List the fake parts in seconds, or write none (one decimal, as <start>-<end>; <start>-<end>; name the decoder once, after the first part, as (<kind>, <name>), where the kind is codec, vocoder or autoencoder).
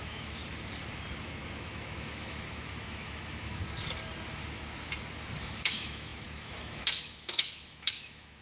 0.0-0.4 (autoencoder, DAC-VAE); 1.2-3.6; 5.4-8.4